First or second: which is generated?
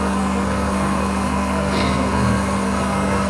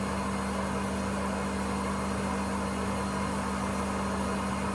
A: first